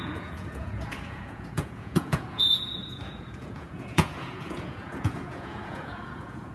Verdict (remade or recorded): remade